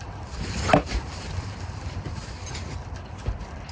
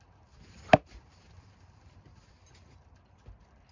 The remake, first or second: first